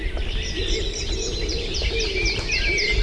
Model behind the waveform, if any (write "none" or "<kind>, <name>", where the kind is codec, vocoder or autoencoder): none